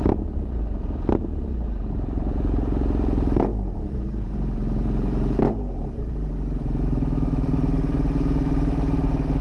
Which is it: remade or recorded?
remade